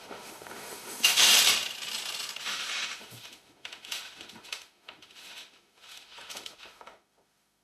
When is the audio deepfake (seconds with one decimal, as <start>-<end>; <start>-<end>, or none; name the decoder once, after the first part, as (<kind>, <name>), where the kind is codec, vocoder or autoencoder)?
0.0-1.3 (autoencoder, DAC-VAE); 2.4-7.6